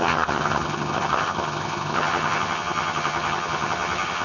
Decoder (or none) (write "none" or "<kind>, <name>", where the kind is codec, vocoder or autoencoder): vocoder, HiFi-GAN